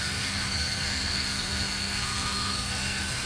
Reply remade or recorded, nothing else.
remade